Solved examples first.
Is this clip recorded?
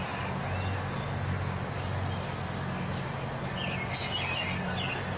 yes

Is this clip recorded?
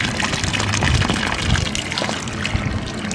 yes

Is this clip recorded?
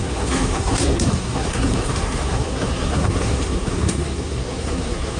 no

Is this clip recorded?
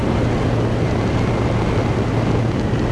yes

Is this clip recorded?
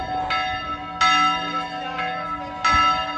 yes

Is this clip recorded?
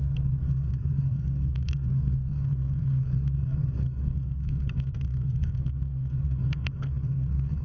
no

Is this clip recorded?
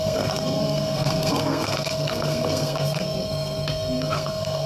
no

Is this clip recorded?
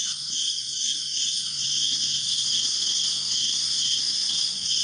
no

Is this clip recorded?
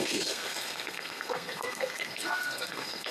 no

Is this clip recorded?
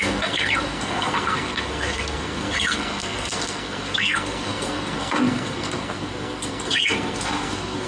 no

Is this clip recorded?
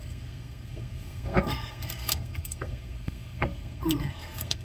no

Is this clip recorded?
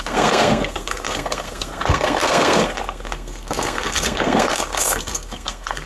no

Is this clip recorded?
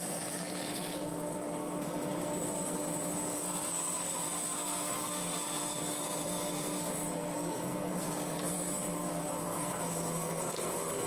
no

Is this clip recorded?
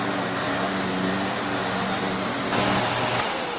yes